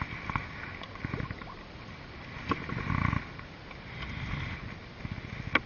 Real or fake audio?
real